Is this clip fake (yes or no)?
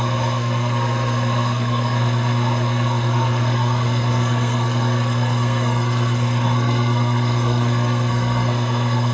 yes